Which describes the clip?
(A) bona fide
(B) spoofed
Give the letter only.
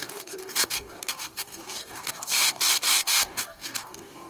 B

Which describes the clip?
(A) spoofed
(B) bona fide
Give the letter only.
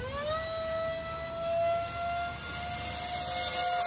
B